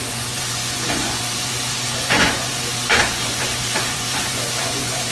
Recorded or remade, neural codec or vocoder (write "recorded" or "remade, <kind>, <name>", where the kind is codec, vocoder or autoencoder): remade, vocoder, Vocos